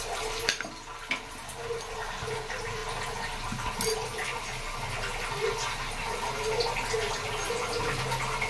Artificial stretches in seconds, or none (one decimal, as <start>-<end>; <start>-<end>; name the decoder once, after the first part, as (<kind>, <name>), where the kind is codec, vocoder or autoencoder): none